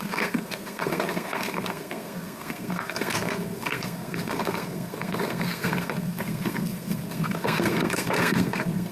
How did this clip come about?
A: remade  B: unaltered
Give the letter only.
A